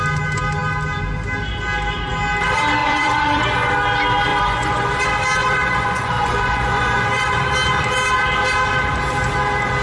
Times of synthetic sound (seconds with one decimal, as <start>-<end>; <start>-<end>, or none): 2.8-3.7; 4.3-5.0; 5.4-7.4